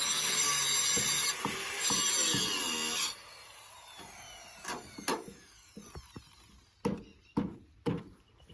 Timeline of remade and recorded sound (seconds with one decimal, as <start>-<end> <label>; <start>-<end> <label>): 0.0-5.1 recorded; 5.1-5.8 remade; 5.8-8.5 recorded